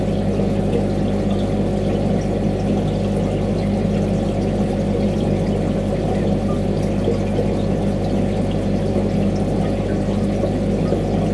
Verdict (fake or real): real